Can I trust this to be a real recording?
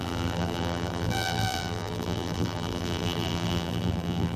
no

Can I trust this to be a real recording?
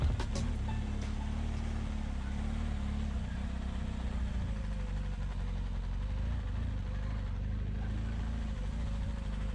yes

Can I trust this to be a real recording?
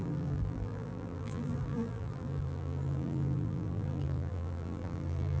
no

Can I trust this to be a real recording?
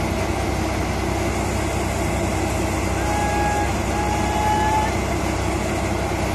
yes